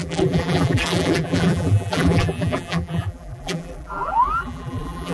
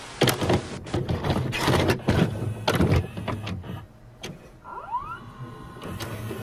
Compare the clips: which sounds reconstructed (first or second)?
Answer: first